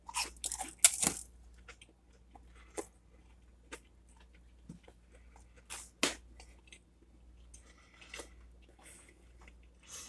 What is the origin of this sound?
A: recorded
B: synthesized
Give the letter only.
A